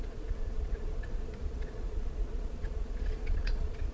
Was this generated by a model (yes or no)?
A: yes